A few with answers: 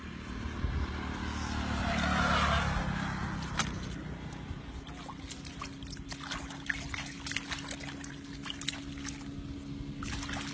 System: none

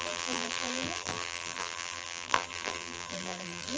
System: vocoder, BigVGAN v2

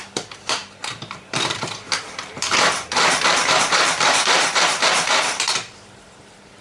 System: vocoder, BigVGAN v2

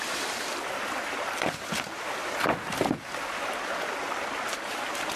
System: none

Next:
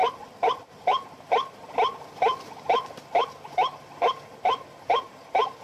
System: vocoder, BigVGAN v2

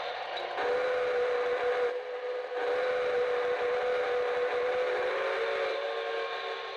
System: none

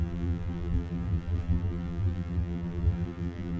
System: vocoder, BigVGAN v2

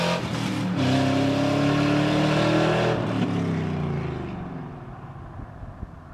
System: none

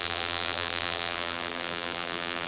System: vocoder, BigVGAN v2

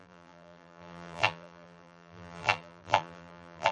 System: vocoder, BigVGAN v2